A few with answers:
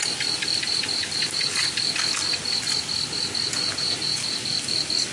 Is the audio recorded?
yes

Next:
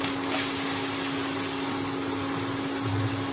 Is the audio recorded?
yes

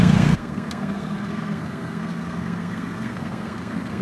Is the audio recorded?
no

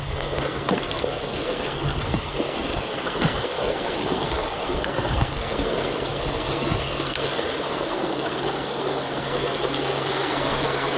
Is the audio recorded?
no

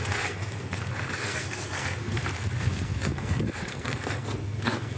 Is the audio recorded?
no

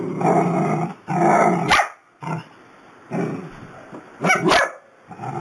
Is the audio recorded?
yes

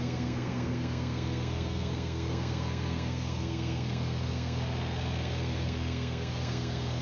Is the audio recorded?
no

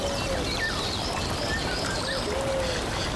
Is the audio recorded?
yes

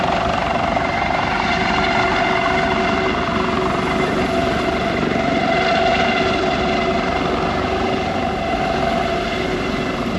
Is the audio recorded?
yes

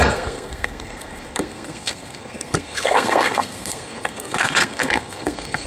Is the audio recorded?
no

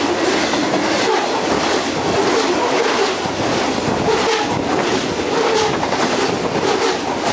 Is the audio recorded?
yes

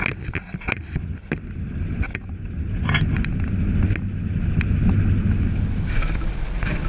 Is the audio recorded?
yes